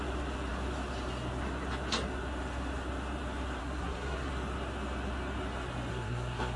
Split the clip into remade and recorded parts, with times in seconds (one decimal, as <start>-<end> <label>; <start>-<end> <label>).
0.0-3.6 recorded; 3.6-4.3 remade; 4.3-5.9 recorded; 5.9-6.6 remade

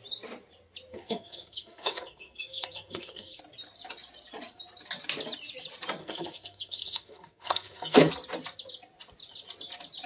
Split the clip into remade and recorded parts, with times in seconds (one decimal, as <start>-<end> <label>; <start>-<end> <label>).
0.0-0.9 recorded; 0.9-3.4 remade; 3.4-6.0 recorded; 6.0-8.1 remade; 8.1-10.1 recorded

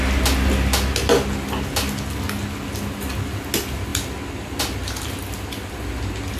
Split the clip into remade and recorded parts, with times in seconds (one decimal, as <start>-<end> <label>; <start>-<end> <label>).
0.0-6.4 recorded

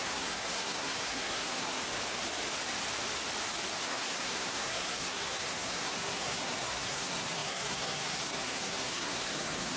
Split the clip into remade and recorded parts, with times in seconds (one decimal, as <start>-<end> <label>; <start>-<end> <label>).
0.0-1.8 remade; 1.8-3.8 recorded; 3.8-9.8 remade